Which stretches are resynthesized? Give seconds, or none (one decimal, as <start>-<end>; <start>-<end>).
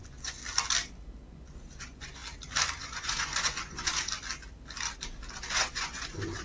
0.0-0.4; 1.3-2.2; 2.8-3.9; 5.5-6.4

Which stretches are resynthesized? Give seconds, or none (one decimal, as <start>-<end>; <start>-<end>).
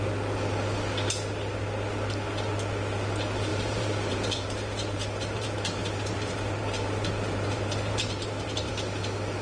3.5-8.7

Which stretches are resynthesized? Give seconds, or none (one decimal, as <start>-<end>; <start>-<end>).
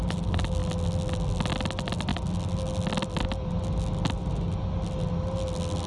none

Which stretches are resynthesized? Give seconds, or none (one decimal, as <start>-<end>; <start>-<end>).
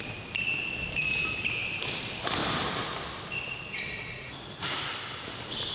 4.0-4.9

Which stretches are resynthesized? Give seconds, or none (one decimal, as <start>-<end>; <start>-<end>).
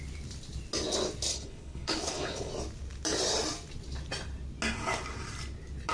1.3-2.5